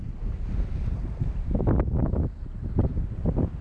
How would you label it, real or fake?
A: real